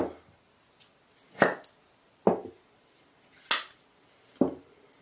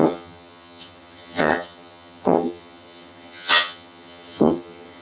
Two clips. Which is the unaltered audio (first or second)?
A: first